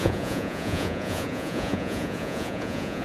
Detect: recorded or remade remade